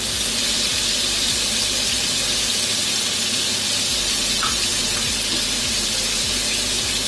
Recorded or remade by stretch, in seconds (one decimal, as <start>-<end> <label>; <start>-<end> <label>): 0.0-7.1 recorded

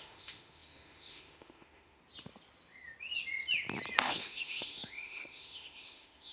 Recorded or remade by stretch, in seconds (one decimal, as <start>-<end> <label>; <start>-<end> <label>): 0.0-2.0 remade; 2.0-4.0 recorded; 4.0-6.3 remade